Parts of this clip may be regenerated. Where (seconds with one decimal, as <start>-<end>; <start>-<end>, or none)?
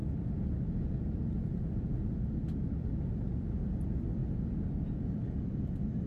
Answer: none